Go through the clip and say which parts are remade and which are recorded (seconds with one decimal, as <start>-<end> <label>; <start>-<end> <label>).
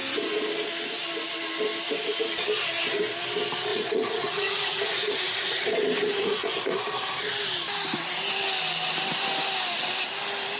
0.0-3.7 recorded; 3.7-5.6 remade; 5.6-6.1 recorded; 6.1-6.8 remade; 6.8-10.6 recorded